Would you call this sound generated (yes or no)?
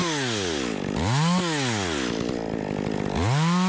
no